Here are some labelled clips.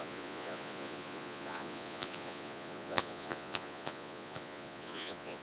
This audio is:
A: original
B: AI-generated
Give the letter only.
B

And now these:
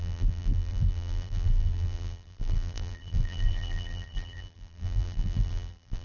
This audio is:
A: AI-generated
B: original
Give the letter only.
A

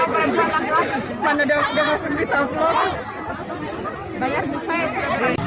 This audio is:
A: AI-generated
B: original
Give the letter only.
B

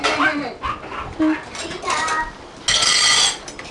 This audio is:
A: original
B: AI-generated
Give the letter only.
A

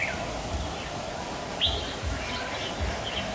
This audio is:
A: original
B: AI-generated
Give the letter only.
A